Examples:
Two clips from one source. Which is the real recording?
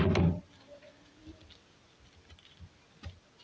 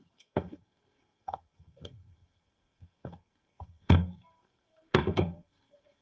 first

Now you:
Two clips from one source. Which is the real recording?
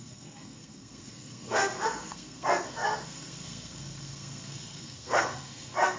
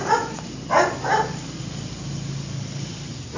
second